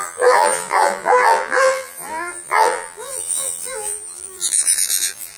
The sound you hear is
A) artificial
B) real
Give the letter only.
A